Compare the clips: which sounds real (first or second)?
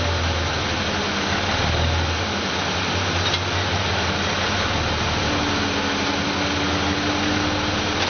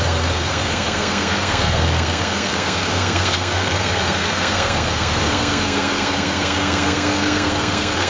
first